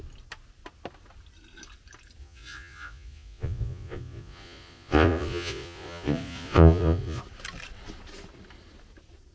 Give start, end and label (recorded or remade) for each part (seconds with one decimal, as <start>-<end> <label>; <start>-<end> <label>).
0.0-2.2 recorded; 2.2-7.2 remade; 7.2-9.3 recorded